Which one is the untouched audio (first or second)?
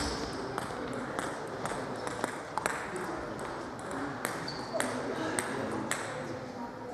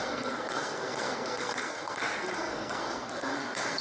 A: first